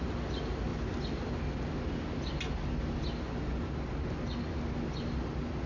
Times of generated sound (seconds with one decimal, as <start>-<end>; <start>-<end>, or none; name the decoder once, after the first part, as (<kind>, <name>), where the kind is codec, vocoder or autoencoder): none